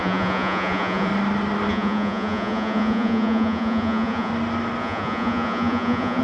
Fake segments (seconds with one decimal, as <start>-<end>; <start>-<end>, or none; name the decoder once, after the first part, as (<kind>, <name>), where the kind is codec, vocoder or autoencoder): 0.0-1.1 (vocoder, Vocos); 1.7-4.3; 4.8-6.2